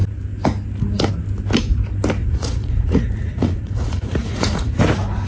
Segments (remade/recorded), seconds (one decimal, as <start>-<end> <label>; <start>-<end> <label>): 0.0-2.2 recorded; 2.2-4.8 remade; 4.8-5.3 recorded